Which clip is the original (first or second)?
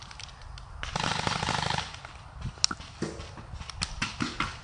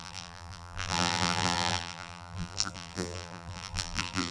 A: first